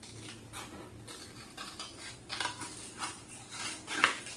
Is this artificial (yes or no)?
no